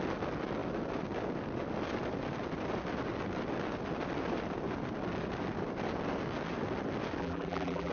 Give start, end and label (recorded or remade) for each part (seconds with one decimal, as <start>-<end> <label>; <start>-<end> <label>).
0.0-7.2 recorded; 7.2-7.9 remade